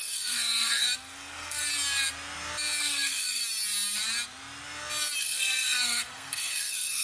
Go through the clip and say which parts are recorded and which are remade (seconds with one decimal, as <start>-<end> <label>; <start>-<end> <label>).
0.0-1.6 remade; 1.6-2.8 recorded; 2.8-3.4 remade; 3.4-5.2 recorded; 5.2-7.0 remade